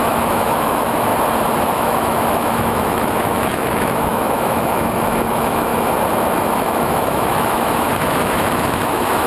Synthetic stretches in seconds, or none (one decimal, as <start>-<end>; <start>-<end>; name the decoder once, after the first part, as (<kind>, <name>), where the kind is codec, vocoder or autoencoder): 0.0-1.1 (autoencoder, DAC-VAE); 1.6-5.7; 6.6-9.3